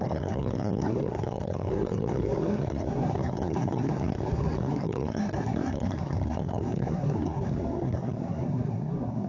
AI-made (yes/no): yes